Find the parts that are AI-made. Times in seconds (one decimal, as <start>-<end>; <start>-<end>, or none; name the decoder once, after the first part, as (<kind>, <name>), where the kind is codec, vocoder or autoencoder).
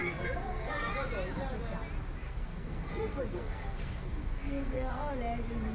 0.0-0.9 (codec, SNAC); 2.2-5.1